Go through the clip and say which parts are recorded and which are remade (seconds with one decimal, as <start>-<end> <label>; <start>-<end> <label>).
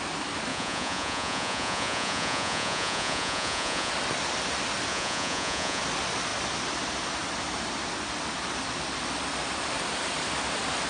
0.0-0.5 recorded; 0.5-3.9 remade; 3.9-4.9 recorded; 4.9-5.8 remade; 5.8-10.9 recorded